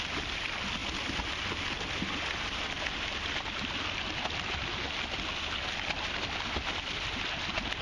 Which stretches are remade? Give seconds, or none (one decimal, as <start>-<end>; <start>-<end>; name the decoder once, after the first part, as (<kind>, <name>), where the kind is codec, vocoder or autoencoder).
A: none